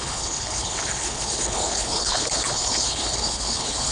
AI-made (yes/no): yes